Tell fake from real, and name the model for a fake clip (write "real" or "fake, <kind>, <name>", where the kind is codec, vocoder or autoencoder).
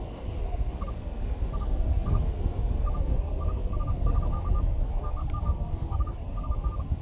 fake, codec, SNAC